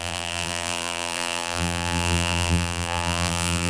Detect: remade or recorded remade